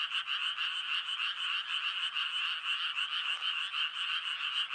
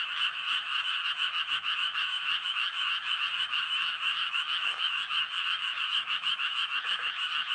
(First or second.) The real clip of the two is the first